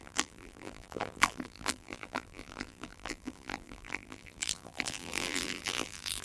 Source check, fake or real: fake